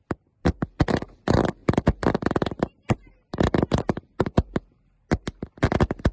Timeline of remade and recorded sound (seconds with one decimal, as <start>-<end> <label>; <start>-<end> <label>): 0.0-6.1 recorded